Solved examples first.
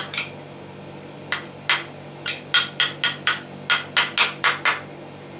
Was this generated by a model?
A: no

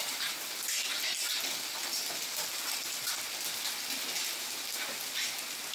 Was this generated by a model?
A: no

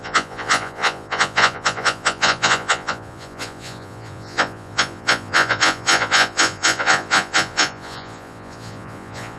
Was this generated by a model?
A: yes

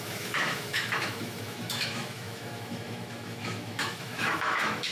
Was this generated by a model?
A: yes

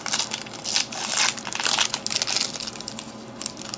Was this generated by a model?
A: no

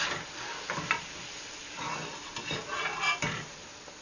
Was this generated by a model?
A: no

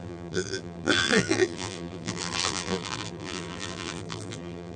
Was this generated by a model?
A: yes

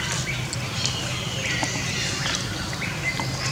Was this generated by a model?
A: no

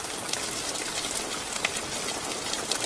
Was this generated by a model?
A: no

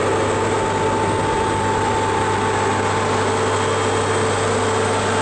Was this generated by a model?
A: no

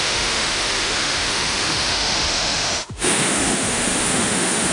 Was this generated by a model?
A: yes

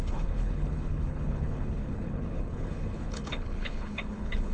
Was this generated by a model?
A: yes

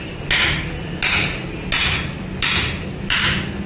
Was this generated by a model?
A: no